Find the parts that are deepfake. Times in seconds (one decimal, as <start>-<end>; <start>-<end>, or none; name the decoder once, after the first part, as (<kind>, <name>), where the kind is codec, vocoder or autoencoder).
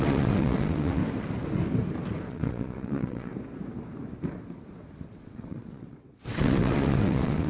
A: 0.0-1.0 (vocoder, WaveNeXt); 2.3-3.3; 5.1-7.5